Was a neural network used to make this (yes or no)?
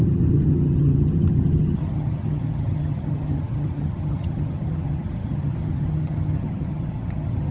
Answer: yes